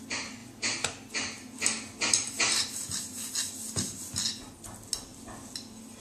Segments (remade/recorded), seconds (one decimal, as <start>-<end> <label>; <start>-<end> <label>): 0.0-6.0 recorded